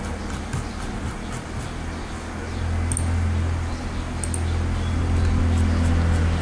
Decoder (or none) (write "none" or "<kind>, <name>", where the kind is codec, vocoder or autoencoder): none